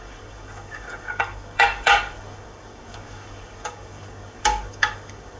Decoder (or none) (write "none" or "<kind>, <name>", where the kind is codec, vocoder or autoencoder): codec, DAC